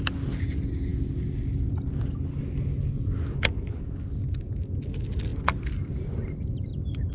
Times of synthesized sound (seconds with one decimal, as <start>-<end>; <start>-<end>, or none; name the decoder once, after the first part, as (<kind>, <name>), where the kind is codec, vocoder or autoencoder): none